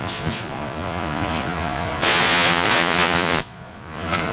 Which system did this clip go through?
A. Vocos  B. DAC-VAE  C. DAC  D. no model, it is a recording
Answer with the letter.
A